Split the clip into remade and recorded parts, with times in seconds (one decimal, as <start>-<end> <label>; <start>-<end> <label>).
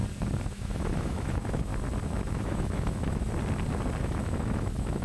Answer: 0.0-0.5 recorded; 0.5-1.7 remade; 1.7-2.3 recorded; 2.3-3.2 remade; 3.2-4.0 recorded; 4.0-5.0 remade